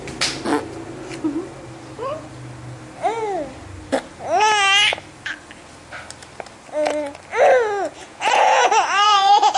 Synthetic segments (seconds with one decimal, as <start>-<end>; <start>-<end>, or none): 8.0-9.6